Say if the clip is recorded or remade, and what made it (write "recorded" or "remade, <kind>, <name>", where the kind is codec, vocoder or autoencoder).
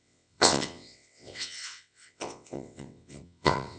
remade, vocoder, WaveNeXt